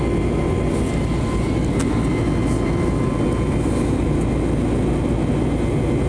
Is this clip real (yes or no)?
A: yes